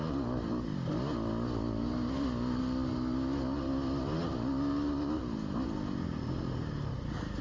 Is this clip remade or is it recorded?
recorded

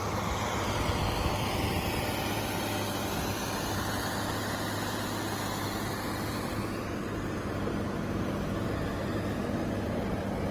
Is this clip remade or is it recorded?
recorded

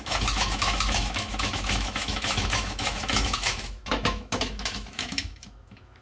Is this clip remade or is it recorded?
remade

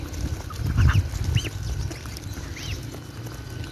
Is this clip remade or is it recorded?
recorded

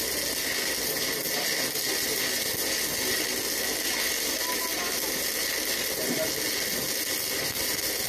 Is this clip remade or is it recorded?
recorded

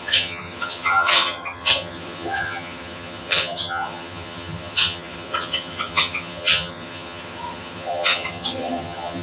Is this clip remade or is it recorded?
remade